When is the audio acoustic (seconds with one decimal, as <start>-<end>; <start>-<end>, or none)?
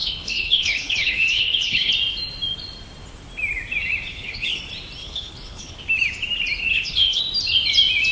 1.9-4.1; 4.6-5.0; 5.8-6.7; 7.2-8.1